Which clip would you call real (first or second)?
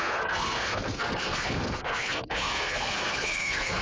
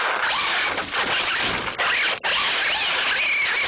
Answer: second